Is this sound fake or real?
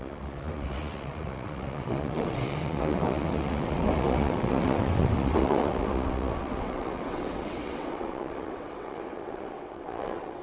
fake